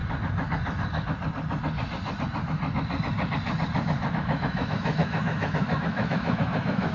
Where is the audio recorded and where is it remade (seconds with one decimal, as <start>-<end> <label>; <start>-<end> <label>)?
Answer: 0.0-4.1 recorded; 4.1-6.9 remade